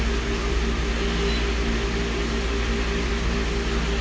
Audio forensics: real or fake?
real